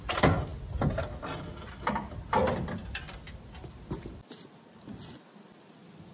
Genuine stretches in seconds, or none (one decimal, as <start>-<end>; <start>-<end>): 0.0-6.1